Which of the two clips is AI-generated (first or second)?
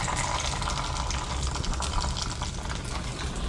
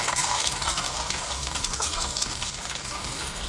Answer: second